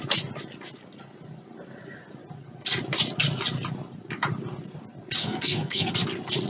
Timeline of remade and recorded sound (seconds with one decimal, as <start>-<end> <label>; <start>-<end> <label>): 0.0-5.2 recorded; 5.2-5.9 remade; 5.9-6.5 recorded